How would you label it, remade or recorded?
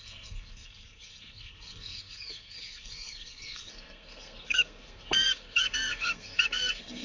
remade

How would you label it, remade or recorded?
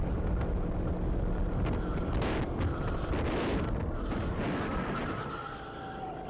recorded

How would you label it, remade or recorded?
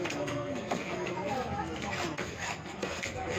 remade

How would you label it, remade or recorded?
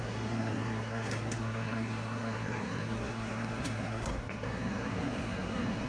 remade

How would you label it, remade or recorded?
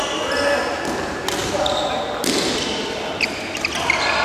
recorded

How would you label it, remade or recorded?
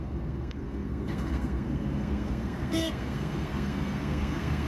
remade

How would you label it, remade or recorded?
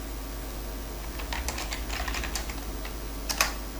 recorded